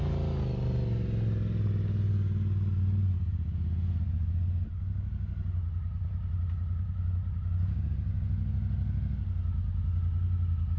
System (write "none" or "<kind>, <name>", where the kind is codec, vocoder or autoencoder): none